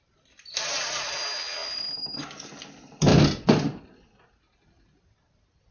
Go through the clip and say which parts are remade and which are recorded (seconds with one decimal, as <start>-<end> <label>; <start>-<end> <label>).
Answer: 0.0-3.1 recorded; 3.1-3.9 remade; 3.9-5.7 recorded